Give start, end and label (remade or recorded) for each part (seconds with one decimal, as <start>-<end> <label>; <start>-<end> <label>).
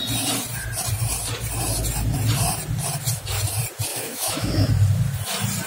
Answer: 0.0-3.9 recorded; 3.9-4.7 remade; 4.7-5.7 recorded